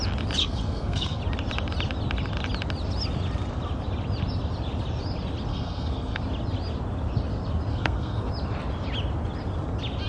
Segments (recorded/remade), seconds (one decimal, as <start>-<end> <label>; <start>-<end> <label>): 0.0-0.4 recorded; 0.4-1.2 remade; 1.2-5.5 recorded; 5.5-6.2 remade; 6.2-7.7 recorded; 7.7-8.3 remade; 8.3-10.1 recorded